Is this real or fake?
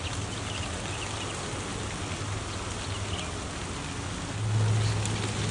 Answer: real